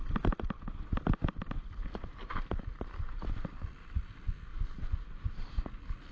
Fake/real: real